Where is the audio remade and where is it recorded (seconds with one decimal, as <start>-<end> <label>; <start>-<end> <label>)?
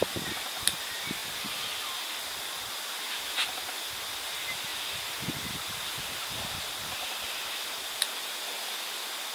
0.0-1.2 recorded; 1.2-3.0 remade; 3.0-9.3 recorded